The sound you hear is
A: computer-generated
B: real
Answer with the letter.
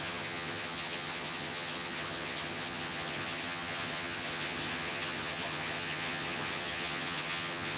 A